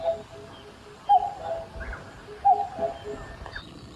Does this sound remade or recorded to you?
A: recorded